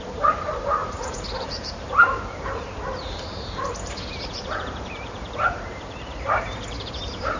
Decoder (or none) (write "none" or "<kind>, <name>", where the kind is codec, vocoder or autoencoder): vocoder, BigVGAN v2